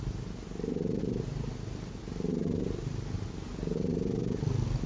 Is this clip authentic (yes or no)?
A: yes